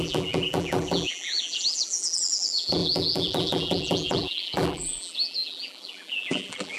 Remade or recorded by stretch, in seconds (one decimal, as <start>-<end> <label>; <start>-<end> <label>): 0.0-6.8 remade